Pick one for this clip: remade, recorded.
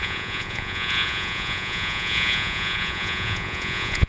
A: remade